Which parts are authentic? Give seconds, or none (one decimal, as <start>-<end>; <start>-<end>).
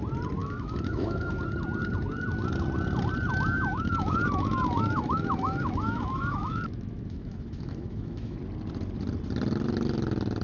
0.0-0.4; 1.3-3.3; 8.4-10.4